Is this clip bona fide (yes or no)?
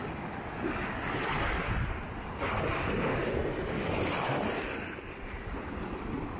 yes